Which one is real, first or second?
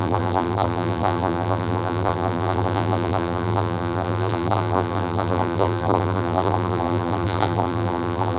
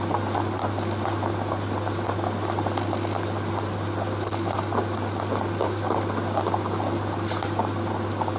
second